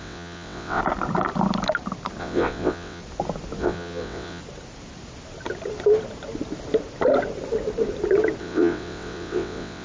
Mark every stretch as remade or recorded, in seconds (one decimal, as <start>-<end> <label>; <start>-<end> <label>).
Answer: 0.0-0.8 remade; 0.8-2.2 recorded; 2.2-3.0 remade; 3.0-3.6 recorded; 3.6-4.4 remade; 4.4-8.4 recorded; 8.4-9.8 remade